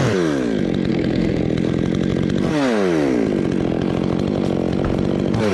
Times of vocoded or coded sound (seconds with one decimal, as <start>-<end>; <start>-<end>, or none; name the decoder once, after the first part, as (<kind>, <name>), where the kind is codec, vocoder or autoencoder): 0.9-1.4 (codec, SNAC)